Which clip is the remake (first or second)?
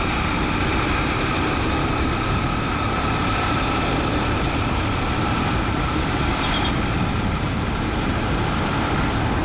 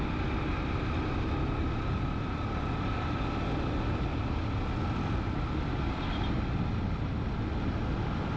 first